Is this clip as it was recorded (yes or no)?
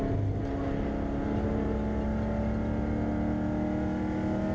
yes